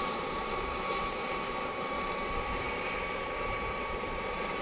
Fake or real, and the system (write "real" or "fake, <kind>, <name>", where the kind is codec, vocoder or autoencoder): fake, vocoder, BigVGAN v2